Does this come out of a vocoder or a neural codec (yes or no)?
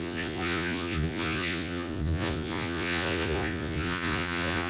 yes